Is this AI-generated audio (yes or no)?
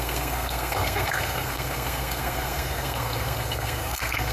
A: yes